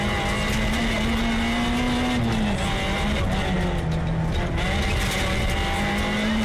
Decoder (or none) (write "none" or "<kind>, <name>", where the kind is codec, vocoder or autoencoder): none